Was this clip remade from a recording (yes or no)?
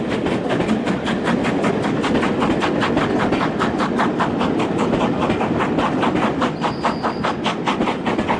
no